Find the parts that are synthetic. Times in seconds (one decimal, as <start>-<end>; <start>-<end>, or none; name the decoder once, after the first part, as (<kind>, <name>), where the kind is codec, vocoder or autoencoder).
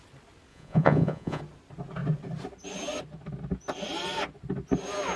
0.5-1.4 (vocoder, Vocos)